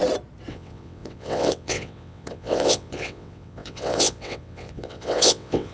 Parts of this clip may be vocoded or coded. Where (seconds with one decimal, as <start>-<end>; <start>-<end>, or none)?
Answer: 0.5-5.7